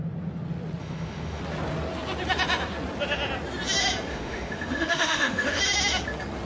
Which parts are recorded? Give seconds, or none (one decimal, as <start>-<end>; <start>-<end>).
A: 0.0-0.8; 1.4-4.1; 5.6-6.4